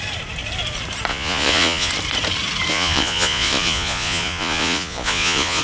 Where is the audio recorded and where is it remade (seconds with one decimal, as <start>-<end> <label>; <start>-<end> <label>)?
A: 0.0-1.1 recorded; 1.1-1.9 remade; 1.9-2.7 recorded; 2.7-5.6 remade